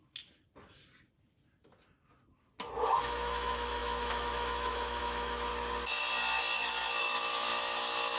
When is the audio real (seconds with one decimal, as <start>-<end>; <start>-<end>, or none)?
0.0-3.0; 5.5-7.0